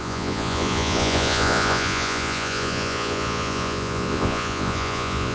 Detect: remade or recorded remade